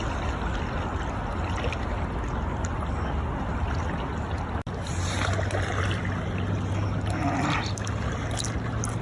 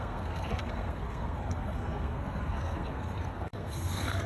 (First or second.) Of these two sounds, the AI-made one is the second